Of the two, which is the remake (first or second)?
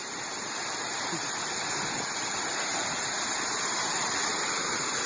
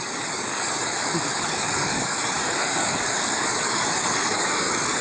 second